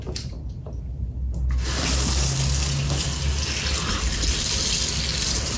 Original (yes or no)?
yes